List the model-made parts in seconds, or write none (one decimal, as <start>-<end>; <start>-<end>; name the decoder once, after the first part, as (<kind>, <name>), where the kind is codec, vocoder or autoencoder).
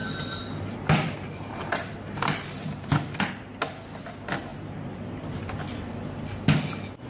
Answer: 0.0-3.3 (vocoder, BigVGAN v2); 4.5-5.4